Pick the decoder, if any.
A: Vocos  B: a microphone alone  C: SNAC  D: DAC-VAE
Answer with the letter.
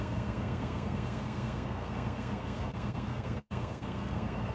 C